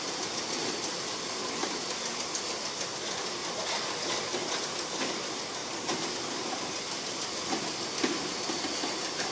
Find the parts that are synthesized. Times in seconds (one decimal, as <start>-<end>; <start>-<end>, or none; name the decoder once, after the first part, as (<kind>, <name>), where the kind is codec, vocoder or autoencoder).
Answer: 5.6-6.1 (vocoder, BigVGAN v2)